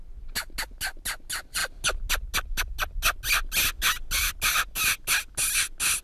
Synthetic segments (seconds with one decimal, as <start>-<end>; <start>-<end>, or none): none